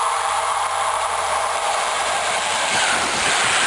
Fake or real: fake